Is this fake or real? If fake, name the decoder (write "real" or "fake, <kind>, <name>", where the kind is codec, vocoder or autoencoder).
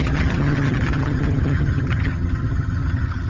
fake, vocoder, HiFi-GAN